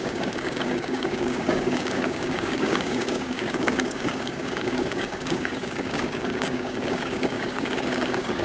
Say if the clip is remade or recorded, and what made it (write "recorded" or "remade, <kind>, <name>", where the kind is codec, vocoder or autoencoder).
remade, codec, DAC